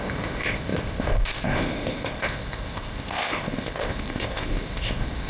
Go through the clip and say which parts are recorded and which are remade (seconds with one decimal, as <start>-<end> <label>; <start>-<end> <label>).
0.0-5.3 remade

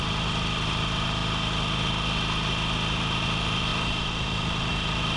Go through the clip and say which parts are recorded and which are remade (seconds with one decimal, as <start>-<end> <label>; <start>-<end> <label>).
0.0-5.2 recorded